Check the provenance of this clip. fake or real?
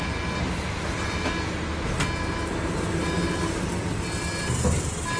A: real